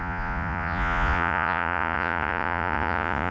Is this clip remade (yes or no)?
yes